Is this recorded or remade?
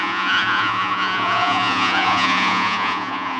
remade